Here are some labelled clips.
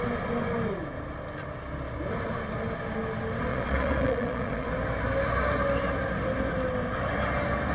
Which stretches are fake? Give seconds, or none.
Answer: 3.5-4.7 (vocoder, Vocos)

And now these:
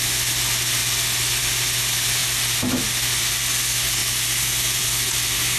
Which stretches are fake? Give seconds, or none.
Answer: none